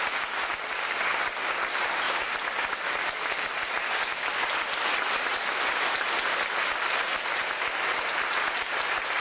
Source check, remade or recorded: recorded